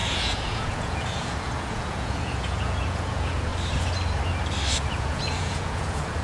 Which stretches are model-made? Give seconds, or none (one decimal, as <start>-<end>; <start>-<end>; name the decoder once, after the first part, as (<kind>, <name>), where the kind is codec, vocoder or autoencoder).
0.0-3.5 (vocoder, Vocos); 4.9-6.2